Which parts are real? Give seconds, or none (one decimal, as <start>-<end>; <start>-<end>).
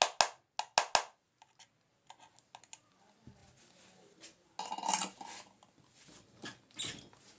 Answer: 0.0-7.4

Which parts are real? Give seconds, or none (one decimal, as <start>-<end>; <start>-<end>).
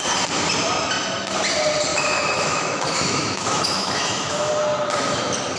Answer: 0.0-1.9; 4.5-5.6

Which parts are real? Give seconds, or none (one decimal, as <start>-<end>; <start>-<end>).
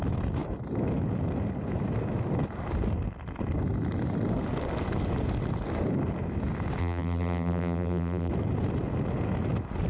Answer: 0.0-6.8; 8.3-9.9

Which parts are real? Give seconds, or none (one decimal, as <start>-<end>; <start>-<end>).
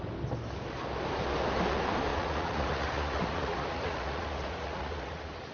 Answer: 0.0-2.1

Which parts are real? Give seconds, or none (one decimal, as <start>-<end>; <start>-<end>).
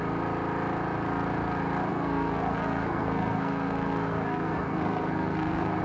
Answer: 0.0-1.9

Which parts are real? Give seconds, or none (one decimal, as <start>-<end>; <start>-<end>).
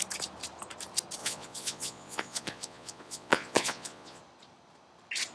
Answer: 0.0-1.2; 4.2-5.3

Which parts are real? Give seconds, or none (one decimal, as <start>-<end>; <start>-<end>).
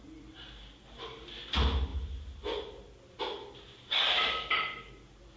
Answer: 0.0-5.4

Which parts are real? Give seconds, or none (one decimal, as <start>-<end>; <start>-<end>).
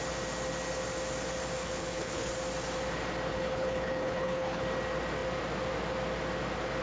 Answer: 0.0-1.6; 2.3-3.3; 4.6-6.8